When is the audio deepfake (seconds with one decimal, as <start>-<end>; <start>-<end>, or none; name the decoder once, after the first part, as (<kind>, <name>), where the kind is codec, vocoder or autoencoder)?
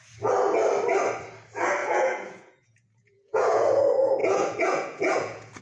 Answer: 1.8-3.8 (vocoder, Vocos); 4.2-5.6